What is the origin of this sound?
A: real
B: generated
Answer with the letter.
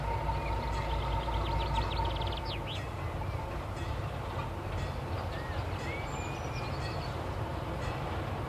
A